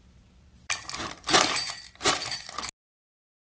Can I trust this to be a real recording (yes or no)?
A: yes